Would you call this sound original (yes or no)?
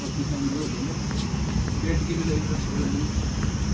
yes